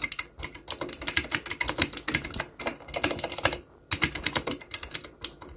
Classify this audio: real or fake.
real